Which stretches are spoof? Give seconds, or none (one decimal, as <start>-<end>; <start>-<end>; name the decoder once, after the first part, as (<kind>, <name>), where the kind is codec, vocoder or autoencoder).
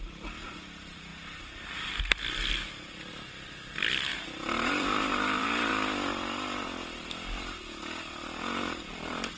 0.0-4.1 (vocoder, BigVGAN v2); 4.7-5.7; 8.8-9.4